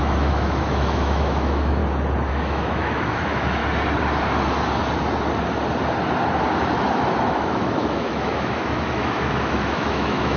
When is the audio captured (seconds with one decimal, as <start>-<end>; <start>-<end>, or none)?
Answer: 1.8-2.3; 3.6-7.3